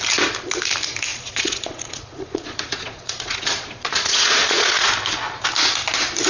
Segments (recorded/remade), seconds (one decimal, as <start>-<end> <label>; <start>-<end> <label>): 0.0-1.1 recorded; 1.1-4.9 remade; 4.9-6.3 recorded